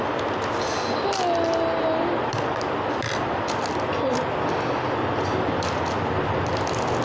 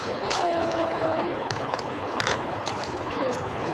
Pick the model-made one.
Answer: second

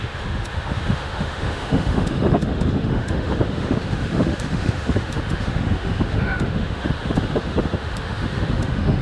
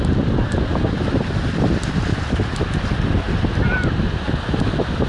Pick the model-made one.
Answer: first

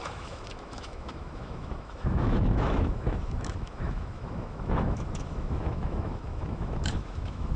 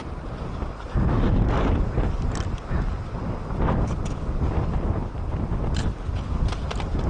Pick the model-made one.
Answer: first